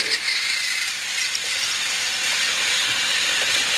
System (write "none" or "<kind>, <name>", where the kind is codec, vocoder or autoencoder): vocoder, BigVGAN v2